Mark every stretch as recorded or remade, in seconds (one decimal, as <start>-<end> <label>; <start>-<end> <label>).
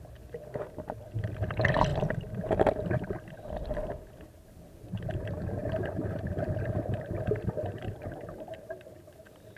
0.0-5.6 recorded; 5.6-9.2 remade; 9.2-9.6 recorded